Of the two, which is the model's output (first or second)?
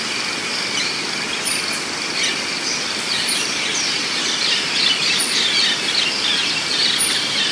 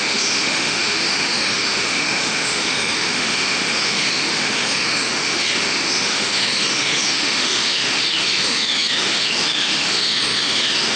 second